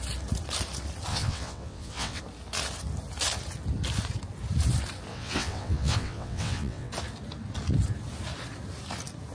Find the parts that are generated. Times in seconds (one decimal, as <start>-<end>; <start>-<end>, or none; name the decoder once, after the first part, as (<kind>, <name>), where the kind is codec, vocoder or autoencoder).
1.1-2.2 (vocoder, WaveNeXt); 5.1-6.9